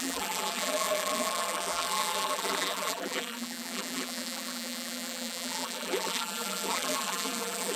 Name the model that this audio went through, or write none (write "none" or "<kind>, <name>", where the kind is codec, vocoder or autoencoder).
vocoder, BigVGAN v2